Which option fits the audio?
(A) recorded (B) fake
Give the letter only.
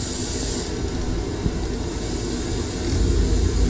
A